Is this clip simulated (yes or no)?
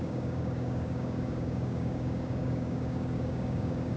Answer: yes